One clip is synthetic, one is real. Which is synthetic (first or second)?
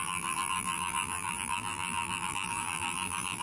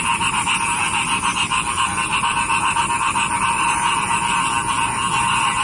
first